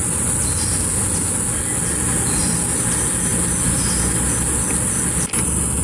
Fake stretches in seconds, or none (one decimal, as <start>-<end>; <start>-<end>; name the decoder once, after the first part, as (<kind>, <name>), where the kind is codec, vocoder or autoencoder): none